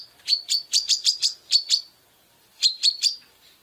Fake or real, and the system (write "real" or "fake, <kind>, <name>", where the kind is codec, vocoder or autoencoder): fake, vocoder, BigVGAN v2